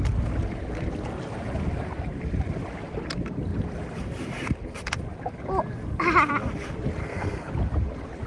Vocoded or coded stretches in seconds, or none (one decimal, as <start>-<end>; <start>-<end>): 7.0-7.5